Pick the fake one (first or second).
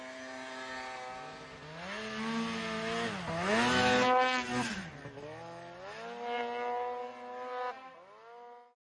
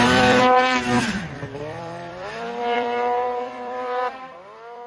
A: second